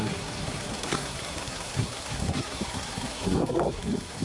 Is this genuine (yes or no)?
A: no